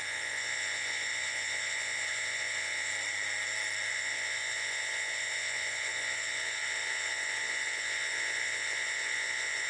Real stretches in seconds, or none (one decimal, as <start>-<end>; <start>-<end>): 2.9-3.9